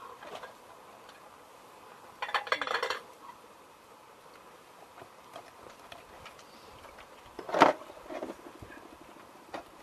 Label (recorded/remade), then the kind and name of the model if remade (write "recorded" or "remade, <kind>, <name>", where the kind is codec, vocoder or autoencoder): remade, vocoder, BigVGAN v2